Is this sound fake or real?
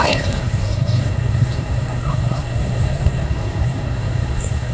fake